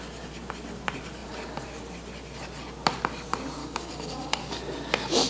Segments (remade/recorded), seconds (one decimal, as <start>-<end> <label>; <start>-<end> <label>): 0.0-3.6 recorded; 3.6-4.6 remade; 4.6-5.3 recorded